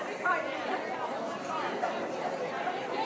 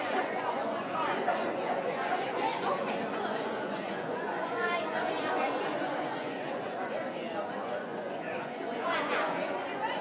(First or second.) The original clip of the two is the first